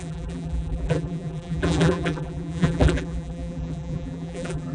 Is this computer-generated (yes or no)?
yes